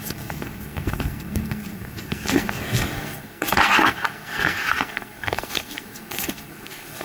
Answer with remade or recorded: remade